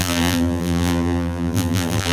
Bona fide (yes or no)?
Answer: no